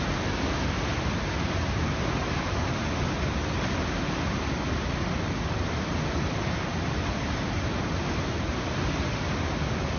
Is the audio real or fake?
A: real